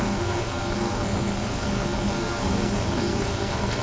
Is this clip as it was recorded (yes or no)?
no